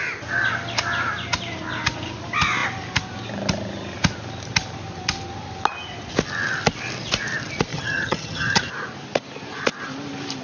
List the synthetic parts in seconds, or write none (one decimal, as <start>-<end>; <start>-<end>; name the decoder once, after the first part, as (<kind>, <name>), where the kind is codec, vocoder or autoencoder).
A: 7.7-8.6 (vocoder, HiFi-GAN)